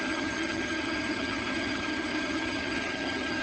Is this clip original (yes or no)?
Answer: no